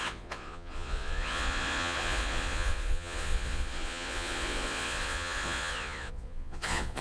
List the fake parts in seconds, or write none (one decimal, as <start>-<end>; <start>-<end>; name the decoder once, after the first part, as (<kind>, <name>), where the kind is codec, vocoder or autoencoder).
0.0-7.0 (vocoder, Vocos)